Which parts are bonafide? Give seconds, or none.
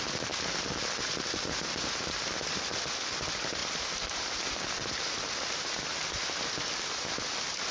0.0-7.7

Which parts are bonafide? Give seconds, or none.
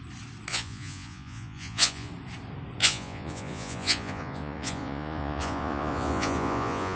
0.0-0.5; 2.1-2.8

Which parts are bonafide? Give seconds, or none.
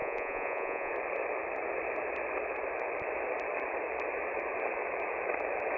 0.9-5.8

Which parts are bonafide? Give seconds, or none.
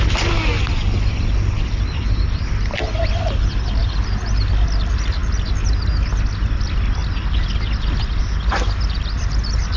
0.0-9.8